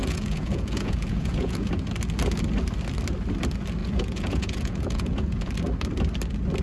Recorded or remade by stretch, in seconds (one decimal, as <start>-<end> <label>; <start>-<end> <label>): 0.0-1.7 remade; 1.7-3.8 recorded; 3.8-5.5 remade; 5.5-6.6 recorded